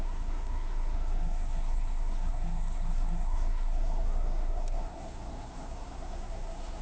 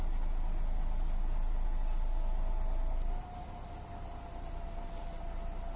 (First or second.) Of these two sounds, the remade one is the first